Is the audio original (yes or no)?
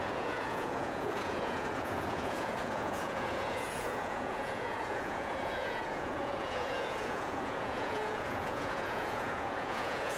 no